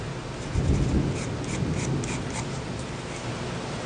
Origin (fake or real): real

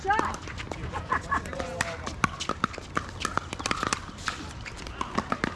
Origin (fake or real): real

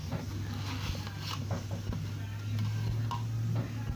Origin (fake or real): real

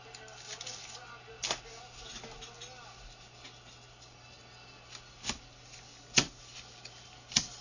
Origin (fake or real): real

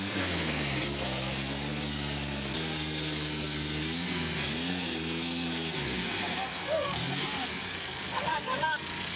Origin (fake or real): fake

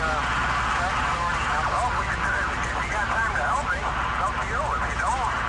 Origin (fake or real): real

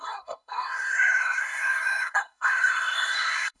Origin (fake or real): fake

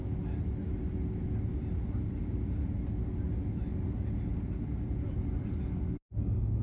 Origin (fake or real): real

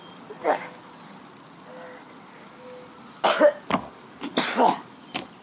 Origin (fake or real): real